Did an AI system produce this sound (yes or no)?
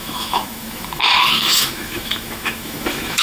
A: yes